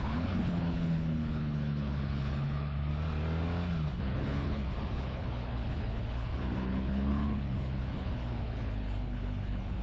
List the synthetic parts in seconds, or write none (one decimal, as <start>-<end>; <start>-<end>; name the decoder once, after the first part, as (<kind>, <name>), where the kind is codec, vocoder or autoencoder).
0.0-2.9 (codec, HILCodec); 4.0-9.8